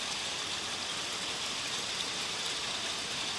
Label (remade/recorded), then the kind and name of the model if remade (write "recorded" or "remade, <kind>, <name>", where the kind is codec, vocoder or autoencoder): recorded